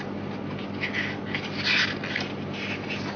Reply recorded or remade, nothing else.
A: recorded